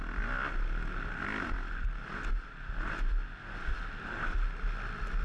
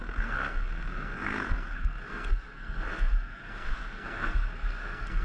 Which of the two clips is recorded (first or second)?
first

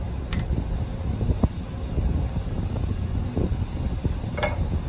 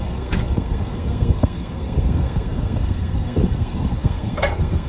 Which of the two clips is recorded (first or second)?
first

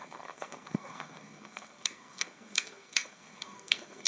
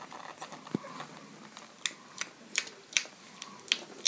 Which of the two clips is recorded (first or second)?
second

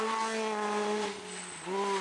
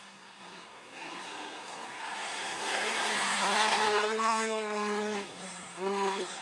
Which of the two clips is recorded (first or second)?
first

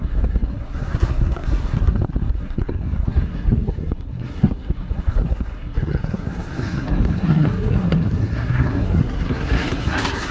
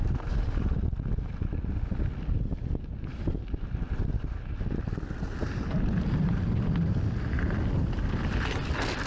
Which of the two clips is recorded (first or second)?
second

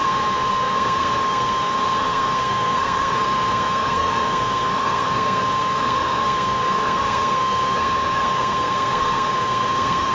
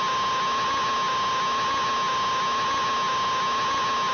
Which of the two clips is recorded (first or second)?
second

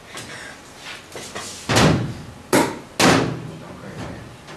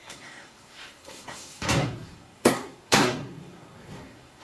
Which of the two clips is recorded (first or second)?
first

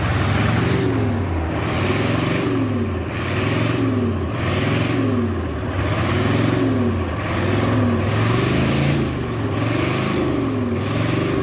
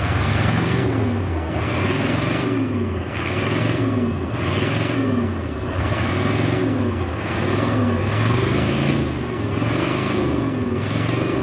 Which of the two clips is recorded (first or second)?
first